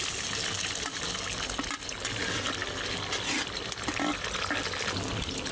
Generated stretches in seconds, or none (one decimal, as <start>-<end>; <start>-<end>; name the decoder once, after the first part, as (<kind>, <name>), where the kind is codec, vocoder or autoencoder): none